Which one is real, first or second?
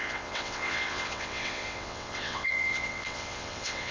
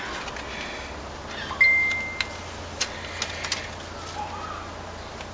second